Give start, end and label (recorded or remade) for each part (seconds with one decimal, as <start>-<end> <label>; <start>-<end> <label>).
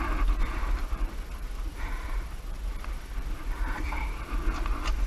0.0-0.8 recorded; 0.8-3.9 remade; 3.9-5.1 recorded